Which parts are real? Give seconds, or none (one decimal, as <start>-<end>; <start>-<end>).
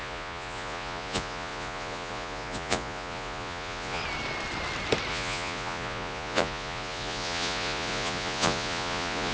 4.0-5.1